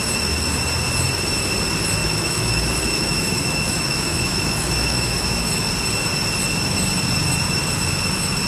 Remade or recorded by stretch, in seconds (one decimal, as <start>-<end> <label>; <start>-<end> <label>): 0.0-2.0 recorded; 2.0-5.7 remade; 5.7-8.5 recorded

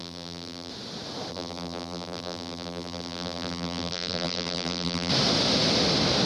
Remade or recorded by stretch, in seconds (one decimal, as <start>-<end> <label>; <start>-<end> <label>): 0.0-0.7 remade; 0.7-1.3 recorded; 1.3-5.1 remade; 5.1-6.3 recorded